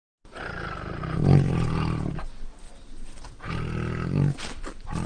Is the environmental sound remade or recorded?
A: recorded